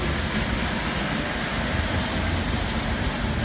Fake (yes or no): no